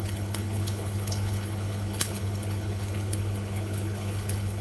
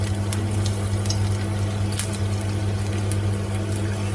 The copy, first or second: first